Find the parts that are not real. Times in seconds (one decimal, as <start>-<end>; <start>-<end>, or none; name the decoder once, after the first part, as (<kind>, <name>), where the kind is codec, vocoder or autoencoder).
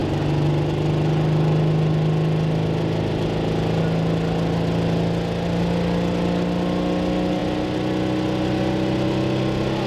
none